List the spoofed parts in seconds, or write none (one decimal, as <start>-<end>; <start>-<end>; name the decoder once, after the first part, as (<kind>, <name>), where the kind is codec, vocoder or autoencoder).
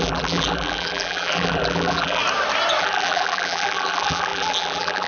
0.0-2.2 (vocoder, BigVGAN v2); 2.8-5.1